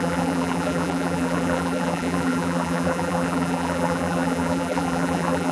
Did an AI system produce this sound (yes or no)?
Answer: yes